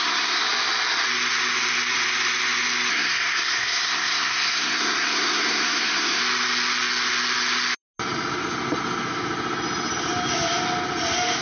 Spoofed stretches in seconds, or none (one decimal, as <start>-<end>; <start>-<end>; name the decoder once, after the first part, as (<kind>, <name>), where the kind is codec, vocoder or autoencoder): 0.0-0.4 (codec, SNAC); 2.9-6.2